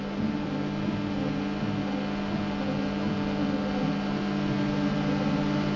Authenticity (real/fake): real